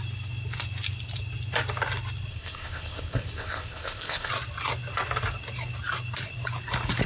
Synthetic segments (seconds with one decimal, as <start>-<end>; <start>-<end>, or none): 2.3-4.3